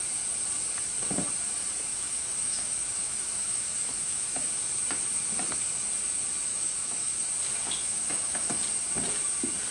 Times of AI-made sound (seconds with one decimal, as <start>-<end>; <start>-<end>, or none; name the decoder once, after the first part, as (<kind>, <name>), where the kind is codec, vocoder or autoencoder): 1.9-4.5 (autoencoder, DAC-VAE); 6.5-7.3; 7.9-8.4